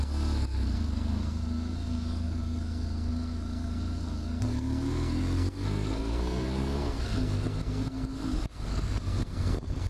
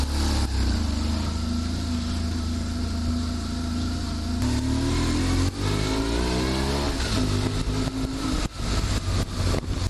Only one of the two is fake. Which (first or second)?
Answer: first